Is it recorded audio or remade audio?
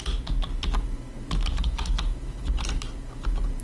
recorded